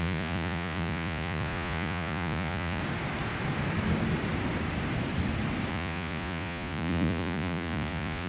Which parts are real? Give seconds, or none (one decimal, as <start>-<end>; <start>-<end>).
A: 2.8-5.7